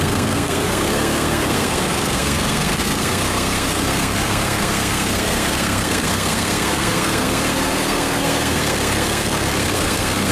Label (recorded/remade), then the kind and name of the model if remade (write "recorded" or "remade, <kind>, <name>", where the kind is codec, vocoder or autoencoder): remade, codec, SNAC